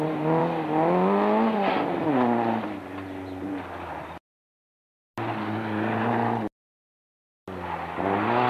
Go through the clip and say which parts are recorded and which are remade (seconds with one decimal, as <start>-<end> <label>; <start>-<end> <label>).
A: 0.0-8.5 recorded